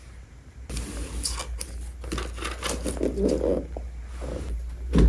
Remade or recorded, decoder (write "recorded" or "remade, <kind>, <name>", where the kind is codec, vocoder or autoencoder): recorded